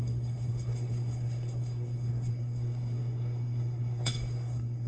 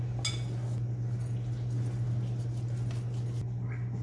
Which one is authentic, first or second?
second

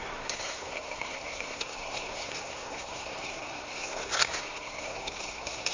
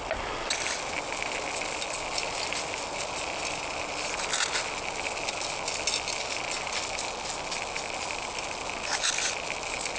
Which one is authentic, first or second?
second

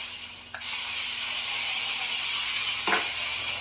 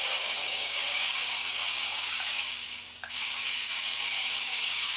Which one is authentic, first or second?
first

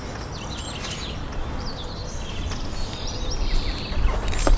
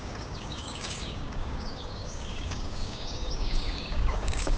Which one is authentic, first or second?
first